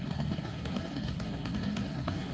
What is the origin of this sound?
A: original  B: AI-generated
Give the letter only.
B